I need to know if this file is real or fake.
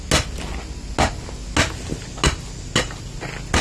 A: real